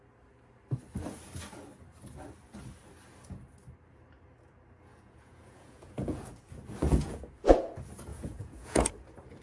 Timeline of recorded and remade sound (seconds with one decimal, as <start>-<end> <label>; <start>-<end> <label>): 0.0-4.9 recorded; 4.9-6.3 remade; 6.3-6.8 recorded; 6.8-7.3 remade; 7.3-8.1 recorded; 8.1-8.9 remade; 8.9-9.4 recorded